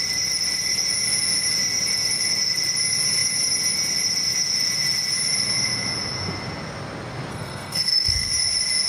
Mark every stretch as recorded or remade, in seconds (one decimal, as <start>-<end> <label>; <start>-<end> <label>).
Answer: 0.0-7.3 recorded; 7.3-8.3 remade; 8.3-8.9 recorded